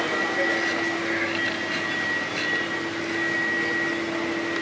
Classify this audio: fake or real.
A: real